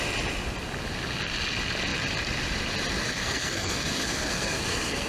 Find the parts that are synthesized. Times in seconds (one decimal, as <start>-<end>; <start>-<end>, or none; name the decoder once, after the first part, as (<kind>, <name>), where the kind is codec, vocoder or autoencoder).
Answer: 3.1-5.1 (codec, SNAC)